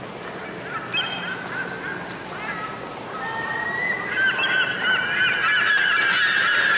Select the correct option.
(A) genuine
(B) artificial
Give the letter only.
A